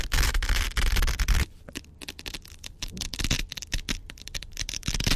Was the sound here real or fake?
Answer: real